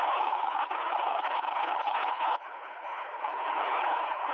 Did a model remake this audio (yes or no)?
yes